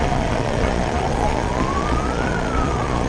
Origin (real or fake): fake